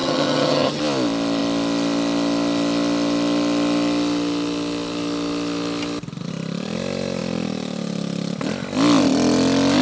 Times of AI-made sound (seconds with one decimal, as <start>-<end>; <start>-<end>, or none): 0.0-0.8